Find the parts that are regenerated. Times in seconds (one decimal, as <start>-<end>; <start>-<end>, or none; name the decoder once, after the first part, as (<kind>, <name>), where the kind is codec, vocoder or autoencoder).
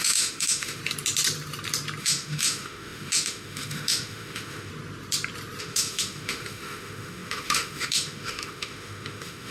0.0-0.8 (autoencoder, DAC-VAE); 2.0-4.7; 5.6-9.5